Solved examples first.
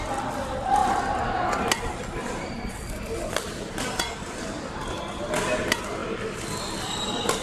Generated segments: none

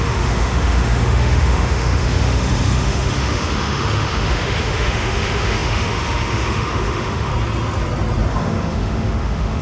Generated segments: 0.0-7.3; 8.3-9.6

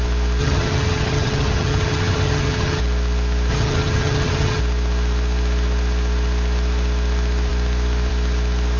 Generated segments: 0.4-2.8; 3.5-4.6